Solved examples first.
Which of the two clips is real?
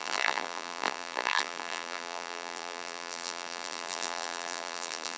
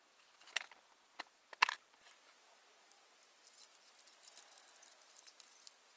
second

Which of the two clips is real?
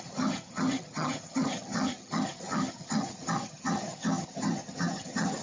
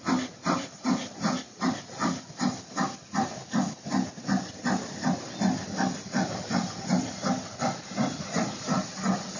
second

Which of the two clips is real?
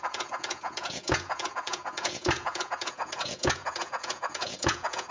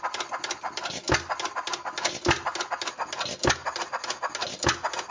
second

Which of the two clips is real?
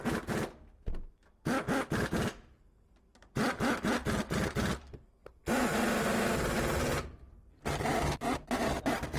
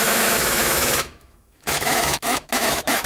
first